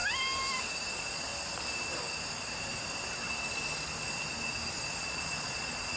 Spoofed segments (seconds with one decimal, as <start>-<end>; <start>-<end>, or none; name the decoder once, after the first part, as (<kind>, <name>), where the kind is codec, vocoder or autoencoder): 0.9-1.3 (vocoder, Vocos); 4.9-6.0